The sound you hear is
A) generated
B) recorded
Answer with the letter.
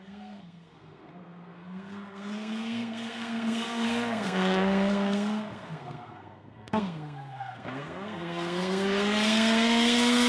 A